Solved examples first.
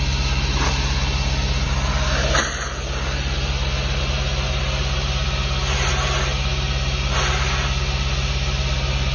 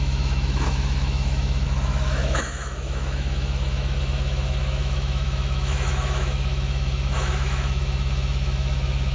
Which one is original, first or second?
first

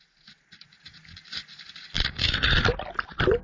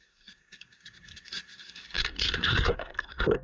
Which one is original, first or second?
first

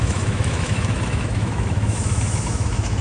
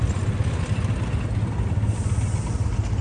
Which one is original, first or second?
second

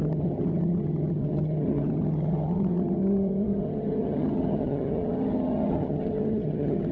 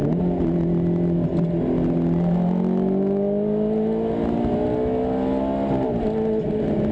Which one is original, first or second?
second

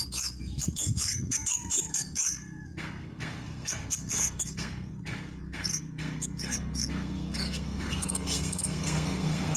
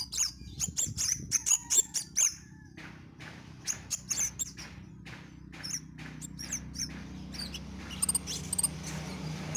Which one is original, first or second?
second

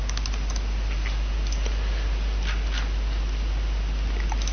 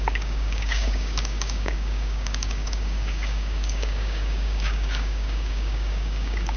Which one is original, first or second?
first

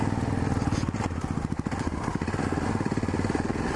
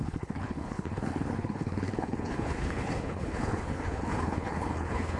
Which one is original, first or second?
first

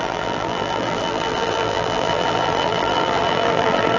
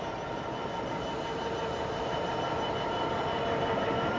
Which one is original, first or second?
second